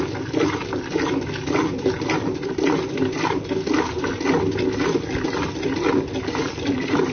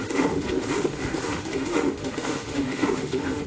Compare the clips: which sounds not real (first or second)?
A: second